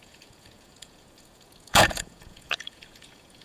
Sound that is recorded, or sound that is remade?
remade